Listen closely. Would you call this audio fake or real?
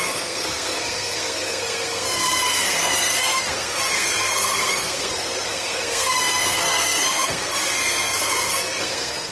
fake